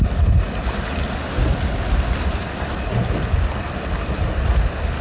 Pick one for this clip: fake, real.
real